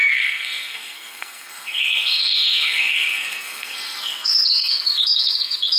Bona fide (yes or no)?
no